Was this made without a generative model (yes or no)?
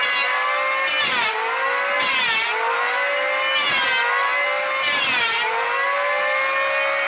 yes